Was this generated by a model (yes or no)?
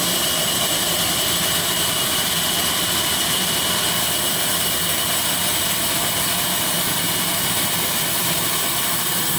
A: yes